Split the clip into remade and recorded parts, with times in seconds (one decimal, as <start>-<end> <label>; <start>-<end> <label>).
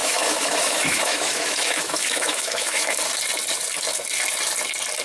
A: 0.0-3.0 remade; 3.0-5.0 recorded